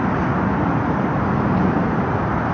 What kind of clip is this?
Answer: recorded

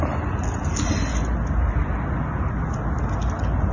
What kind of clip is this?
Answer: recorded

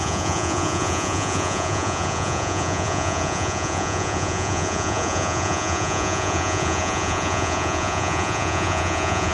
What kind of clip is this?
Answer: remade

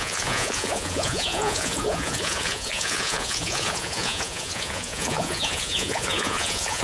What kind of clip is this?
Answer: remade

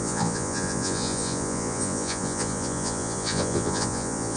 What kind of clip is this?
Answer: remade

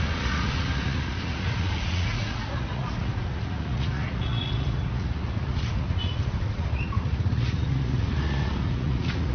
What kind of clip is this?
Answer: remade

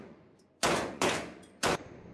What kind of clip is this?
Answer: remade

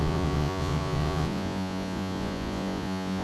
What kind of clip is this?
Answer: remade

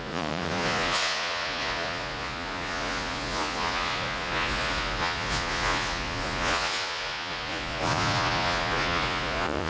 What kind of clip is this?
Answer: remade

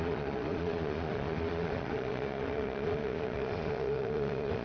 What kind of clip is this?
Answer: remade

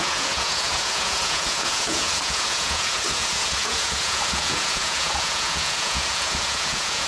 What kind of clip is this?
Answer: remade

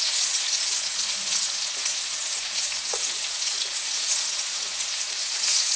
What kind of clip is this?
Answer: remade